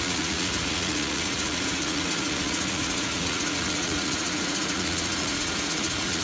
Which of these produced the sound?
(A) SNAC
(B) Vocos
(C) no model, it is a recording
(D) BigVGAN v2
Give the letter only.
B